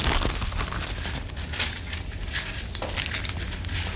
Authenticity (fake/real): real